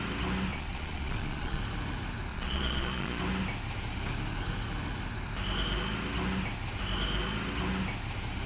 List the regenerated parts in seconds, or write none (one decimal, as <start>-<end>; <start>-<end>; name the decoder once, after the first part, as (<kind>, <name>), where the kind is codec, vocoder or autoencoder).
0.5-1.6 (vocoder, Vocos); 2.3-3.2